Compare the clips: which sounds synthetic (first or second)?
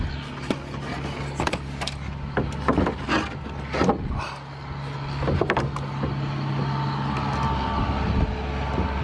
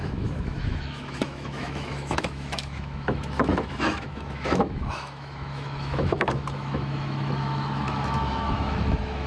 second